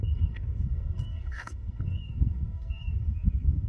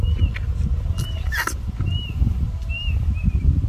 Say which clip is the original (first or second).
second